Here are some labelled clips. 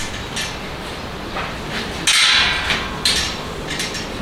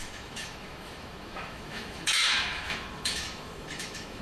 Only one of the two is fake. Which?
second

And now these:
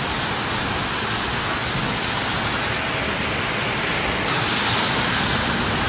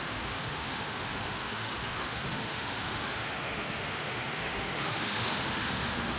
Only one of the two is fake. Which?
second